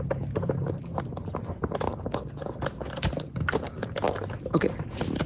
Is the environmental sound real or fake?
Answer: real